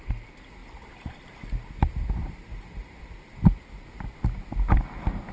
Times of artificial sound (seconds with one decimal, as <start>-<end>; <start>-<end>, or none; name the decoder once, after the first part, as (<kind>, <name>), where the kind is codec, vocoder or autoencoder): none